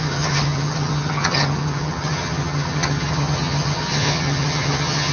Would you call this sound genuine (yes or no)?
no